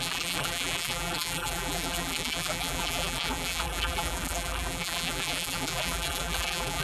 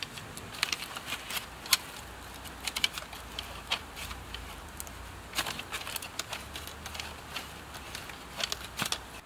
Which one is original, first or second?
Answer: second